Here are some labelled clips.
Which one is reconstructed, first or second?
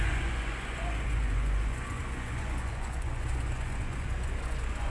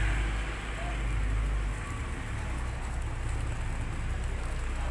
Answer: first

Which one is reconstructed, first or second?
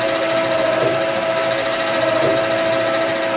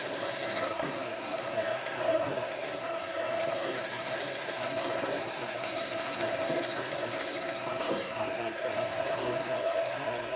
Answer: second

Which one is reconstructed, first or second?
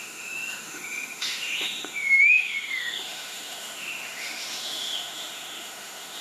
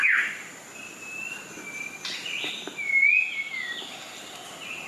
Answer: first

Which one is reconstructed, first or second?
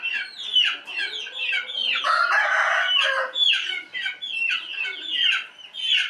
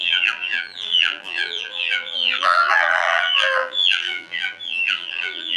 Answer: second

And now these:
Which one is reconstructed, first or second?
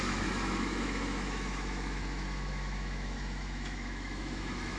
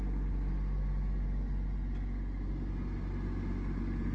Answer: first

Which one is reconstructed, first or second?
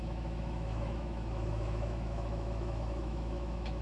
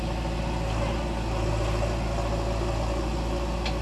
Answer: first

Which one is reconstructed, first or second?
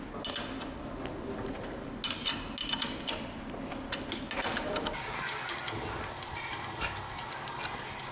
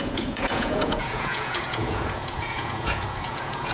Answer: second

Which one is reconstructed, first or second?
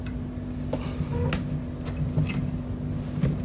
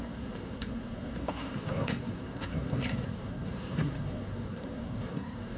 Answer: second